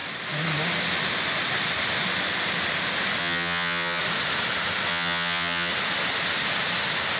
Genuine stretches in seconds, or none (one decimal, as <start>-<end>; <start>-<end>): 0.0-3.2; 4.0-4.9; 5.7-7.2